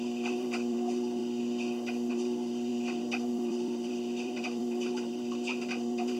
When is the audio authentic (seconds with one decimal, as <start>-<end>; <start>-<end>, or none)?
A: 1.2-2.1